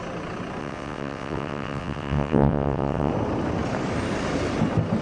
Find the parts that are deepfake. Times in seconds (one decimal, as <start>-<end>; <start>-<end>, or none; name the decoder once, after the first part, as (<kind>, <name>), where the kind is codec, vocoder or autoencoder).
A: 0.6-3.1 (vocoder, WaveNeXt)